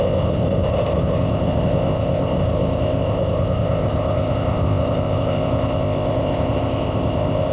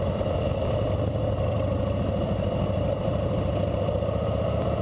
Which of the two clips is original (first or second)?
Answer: second